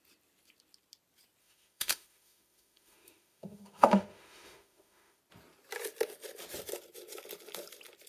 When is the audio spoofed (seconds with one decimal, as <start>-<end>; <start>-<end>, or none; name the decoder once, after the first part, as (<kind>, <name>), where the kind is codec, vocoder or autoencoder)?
1.4-5.2 (autoencoder, DAC-VAE)